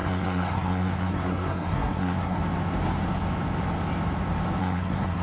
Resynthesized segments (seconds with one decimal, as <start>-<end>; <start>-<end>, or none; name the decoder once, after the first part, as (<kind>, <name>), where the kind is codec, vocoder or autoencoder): 0.0-2.4 (codec, SNAC); 4.6-5.2